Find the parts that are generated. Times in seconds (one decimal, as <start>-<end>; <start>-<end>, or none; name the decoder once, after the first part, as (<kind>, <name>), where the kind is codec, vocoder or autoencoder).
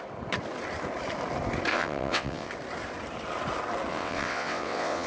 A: 1.7-2.5 (vocoder, WaveNeXt); 3.9-5.1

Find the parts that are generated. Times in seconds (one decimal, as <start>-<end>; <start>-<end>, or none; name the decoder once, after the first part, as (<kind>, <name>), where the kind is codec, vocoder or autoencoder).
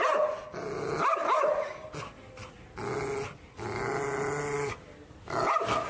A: none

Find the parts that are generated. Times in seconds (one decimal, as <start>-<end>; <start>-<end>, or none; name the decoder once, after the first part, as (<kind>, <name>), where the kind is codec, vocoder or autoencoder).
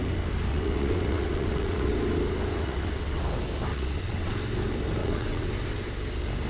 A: 0.5-1.9 (vocoder, WaveNeXt); 2.5-3.2; 3.7-4.3; 5.0-5.5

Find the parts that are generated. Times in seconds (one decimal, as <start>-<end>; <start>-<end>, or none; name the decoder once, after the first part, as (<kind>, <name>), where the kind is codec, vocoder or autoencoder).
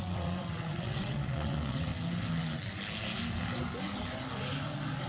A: 0.0-1.9 (vocoder, WaveNeXt)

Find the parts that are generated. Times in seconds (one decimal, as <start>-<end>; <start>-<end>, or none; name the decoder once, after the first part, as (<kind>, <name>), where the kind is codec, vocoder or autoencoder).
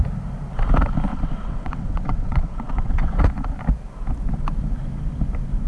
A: 1.1-3.2 (vocoder, WaveNeXt)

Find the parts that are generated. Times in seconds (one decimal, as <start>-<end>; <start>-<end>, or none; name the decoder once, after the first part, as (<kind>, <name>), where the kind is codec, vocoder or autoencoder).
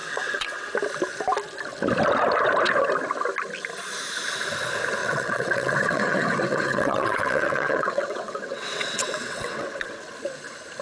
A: 0.0-0.7 (vocoder, WaveNeXt); 5.0-10.1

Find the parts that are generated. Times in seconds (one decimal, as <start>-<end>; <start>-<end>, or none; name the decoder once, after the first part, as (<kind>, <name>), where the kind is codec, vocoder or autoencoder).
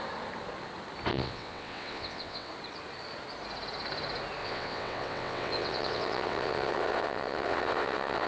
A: 1.1-2.5 (vocoder, WaveNeXt); 4.4-8.3